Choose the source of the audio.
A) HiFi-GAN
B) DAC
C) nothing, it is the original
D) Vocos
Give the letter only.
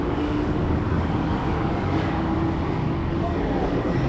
B